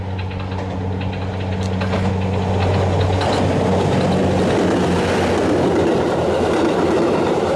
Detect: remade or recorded recorded